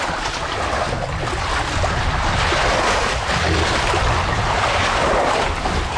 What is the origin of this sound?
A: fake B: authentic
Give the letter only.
B